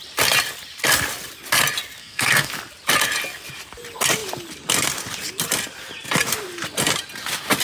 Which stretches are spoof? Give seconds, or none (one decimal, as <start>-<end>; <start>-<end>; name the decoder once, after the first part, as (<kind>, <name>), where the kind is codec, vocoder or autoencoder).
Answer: 2.0-2.5 (codec, SNAC)